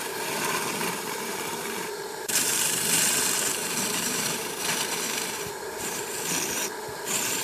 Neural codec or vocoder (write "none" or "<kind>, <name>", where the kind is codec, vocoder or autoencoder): vocoder, BigVGAN v2